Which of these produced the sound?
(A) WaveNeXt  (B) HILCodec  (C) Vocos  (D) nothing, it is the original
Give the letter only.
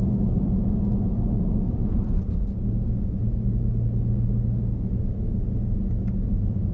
D